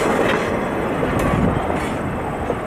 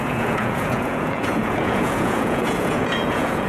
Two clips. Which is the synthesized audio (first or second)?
second